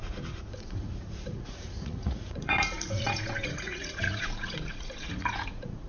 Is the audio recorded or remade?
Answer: remade